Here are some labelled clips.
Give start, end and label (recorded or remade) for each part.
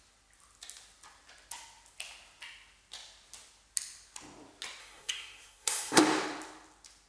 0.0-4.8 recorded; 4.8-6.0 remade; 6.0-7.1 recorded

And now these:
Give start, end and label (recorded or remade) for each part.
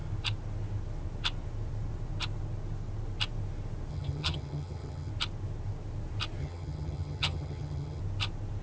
0.0-3.9 recorded; 3.9-5.1 remade; 5.1-6.4 recorded; 6.4-8.0 remade; 8.0-8.6 recorded